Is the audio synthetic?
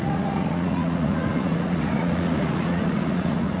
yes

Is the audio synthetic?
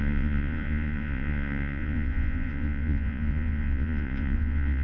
yes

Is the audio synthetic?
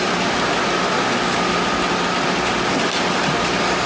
no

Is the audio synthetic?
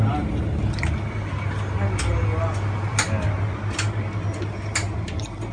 no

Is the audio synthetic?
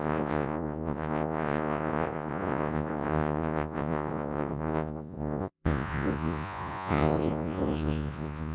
yes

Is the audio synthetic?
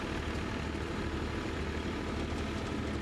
no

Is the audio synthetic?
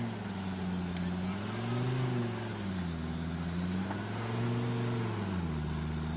no